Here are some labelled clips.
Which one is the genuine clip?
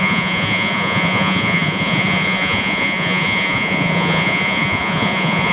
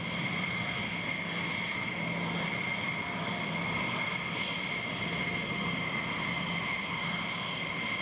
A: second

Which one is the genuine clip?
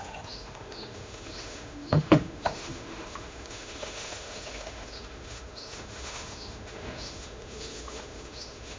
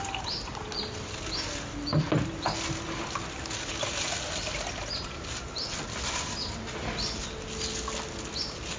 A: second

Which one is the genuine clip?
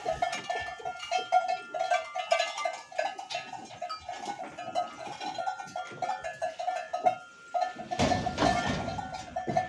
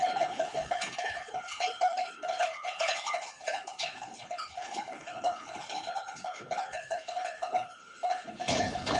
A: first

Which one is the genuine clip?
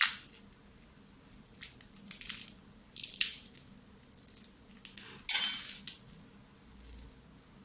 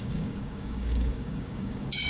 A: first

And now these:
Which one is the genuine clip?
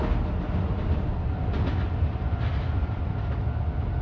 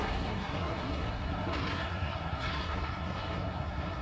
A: first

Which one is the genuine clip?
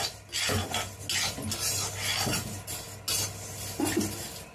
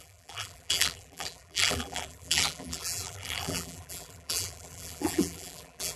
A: first